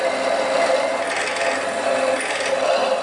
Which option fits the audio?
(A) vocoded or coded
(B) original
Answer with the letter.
B